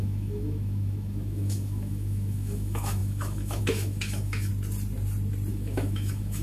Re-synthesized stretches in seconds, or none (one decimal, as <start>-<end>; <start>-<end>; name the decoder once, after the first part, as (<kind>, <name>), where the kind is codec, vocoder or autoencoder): 0.0-4.5 (autoencoder, DAC-VAE); 5.5-6.4